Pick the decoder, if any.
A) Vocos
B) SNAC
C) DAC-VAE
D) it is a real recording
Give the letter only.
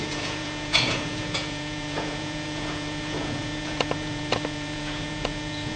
A